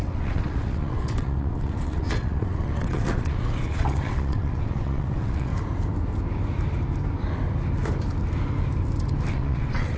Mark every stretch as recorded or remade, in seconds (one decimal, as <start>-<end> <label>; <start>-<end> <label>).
0.0-5.5 remade; 5.5-9.3 recorded; 9.3-10.0 remade